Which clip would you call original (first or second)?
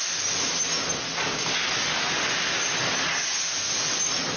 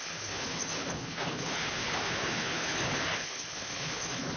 first